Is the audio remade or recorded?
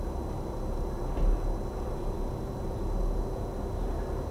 recorded